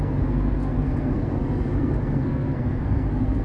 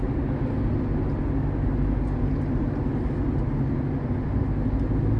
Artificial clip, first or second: first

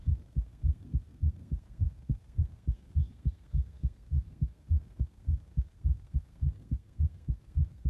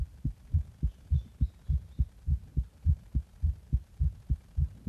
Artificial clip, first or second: first